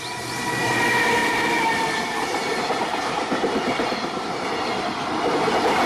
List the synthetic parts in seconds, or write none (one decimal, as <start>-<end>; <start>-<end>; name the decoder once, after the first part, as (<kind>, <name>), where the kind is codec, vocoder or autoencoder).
1.2-4.7 (vocoder, BigVGAN v2)